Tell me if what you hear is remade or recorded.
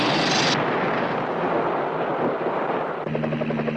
recorded